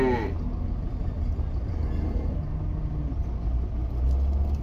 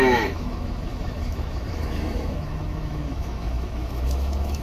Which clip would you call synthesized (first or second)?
second